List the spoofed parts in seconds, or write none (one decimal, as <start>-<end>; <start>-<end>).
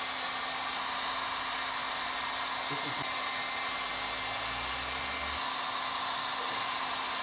none